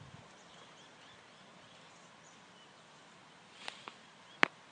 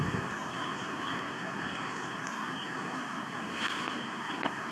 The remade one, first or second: second